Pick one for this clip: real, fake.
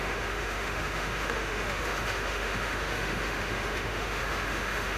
fake